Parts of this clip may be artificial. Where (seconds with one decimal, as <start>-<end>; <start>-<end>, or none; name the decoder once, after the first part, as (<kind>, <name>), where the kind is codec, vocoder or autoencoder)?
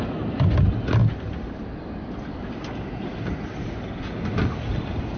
none